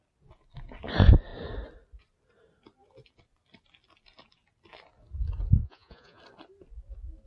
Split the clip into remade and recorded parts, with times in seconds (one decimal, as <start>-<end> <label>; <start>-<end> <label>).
0.0-5.6 recorded; 5.6-6.2 remade; 6.2-7.3 recorded